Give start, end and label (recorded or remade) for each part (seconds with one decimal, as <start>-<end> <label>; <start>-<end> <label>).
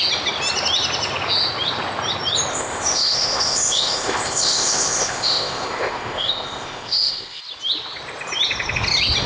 0.0-2.5 recorded; 2.5-7.4 remade; 7.4-9.3 recorded